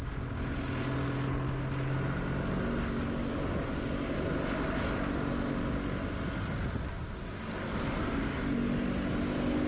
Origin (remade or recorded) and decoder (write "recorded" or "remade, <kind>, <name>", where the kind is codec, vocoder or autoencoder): recorded